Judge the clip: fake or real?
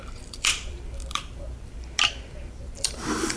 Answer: fake